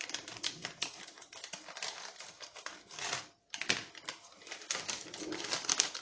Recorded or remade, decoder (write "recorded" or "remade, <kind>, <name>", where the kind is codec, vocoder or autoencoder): recorded